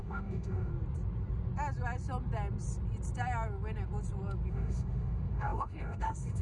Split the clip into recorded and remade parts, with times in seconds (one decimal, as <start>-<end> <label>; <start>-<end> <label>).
0.0-0.7 remade; 0.7-4.5 recorded; 4.5-6.4 remade